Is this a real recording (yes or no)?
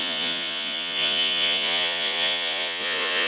no